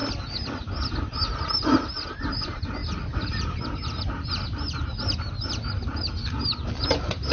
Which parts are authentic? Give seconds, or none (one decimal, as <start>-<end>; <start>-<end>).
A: 0.0-0.9; 2.8-7.3